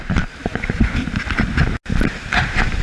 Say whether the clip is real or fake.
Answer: real